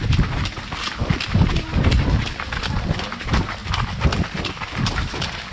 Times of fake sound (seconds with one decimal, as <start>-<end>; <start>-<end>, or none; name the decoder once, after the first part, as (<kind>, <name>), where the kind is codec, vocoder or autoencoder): none